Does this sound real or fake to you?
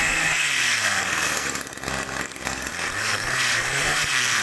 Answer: fake